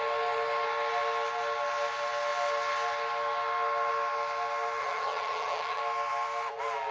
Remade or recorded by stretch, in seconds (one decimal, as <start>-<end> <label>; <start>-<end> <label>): 0.0-4.8 recorded; 4.8-5.8 remade; 5.8-6.9 recorded